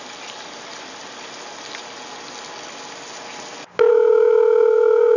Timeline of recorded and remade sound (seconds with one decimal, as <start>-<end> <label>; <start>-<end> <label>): 0.0-3.9 recorded; 3.9-5.2 remade